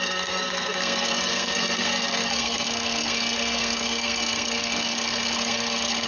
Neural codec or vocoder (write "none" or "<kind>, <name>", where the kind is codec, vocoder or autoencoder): codec, SNAC